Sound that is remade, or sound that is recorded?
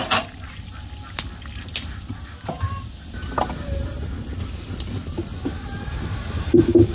recorded